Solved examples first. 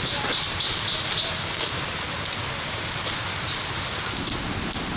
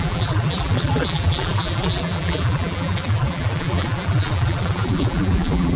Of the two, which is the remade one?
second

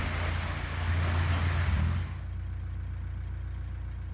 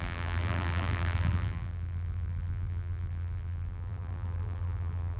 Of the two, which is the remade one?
second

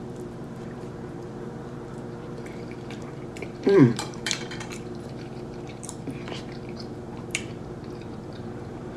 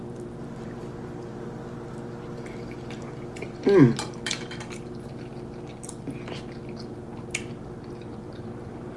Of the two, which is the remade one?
first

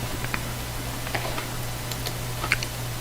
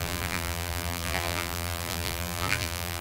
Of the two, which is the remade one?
second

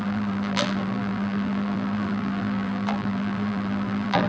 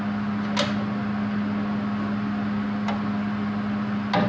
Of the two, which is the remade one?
first